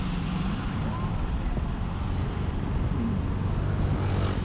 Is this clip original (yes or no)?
yes